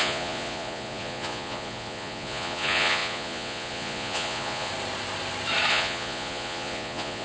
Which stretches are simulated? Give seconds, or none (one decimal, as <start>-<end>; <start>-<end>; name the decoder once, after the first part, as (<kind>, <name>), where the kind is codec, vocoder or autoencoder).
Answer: 0.0-4.7 (vocoder, Vocos); 5.7-7.2